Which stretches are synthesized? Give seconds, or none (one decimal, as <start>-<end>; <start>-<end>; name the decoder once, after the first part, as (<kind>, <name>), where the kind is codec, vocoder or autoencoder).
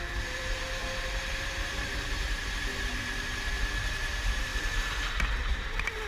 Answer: 0.0-6.1 (vocoder, BigVGAN v2)